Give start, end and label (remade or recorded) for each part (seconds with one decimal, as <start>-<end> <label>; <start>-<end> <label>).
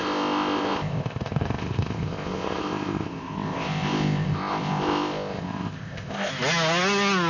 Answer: 0.0-6.3 remade; 6.3-7.3 recorded